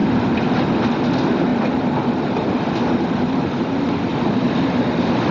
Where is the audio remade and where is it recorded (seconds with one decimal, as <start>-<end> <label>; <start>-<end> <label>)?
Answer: 0.0-0.7 recorded; 0.7-1.5 remade; 1.5-2.1 recorded; 2.1-5.3 remade

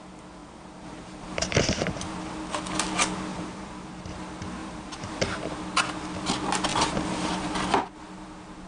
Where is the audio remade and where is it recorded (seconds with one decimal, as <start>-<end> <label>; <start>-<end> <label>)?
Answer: 0.0-0.4 recorded; 0.4-2.1 remade; 2.1-3.3 recorded; 3.3-3.9 remade; 3.9-4.6 recorded; 4.6-5.5 remade; 5.5-6.7 recorded; 6.7-7.9 remade; 7.9-8.7 recorded

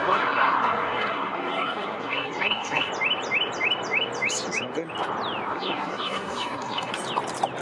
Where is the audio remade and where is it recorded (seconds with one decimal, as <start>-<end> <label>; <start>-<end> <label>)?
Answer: 0.0-2.9 remade; 2.9-5.5 recorded; 5.5-6.9 remade; 6.9-7.6 recorded

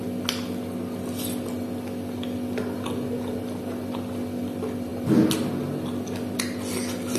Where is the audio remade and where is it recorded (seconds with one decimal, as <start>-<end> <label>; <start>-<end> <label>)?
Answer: 0.0-7.2 recorded